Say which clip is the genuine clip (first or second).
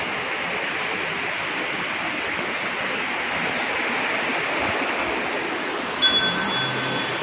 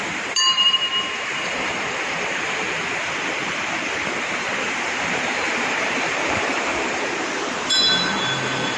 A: first